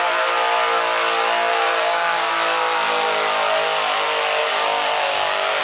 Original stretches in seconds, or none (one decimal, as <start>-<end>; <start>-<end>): 0.0-1.5; 2.3-4.4